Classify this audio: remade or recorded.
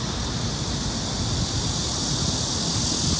recorded